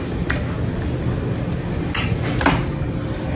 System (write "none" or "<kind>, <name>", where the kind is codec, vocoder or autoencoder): none